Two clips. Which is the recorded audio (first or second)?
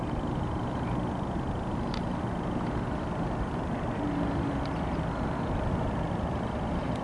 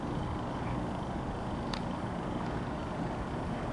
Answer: first